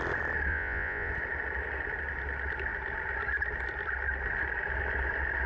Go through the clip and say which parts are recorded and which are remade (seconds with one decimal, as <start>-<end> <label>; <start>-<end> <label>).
0.0-0.5 recorded; 0.5-1.1 remade; 1.1-5.5 recorded